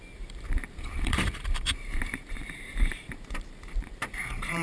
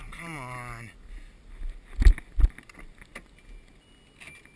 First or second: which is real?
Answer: second